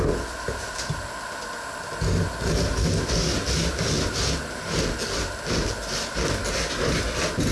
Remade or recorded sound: recorded